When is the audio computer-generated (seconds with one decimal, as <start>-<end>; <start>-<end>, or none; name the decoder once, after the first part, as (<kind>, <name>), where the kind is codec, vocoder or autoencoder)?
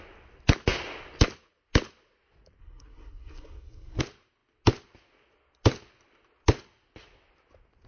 2.6-4.0 (codec, SNAC)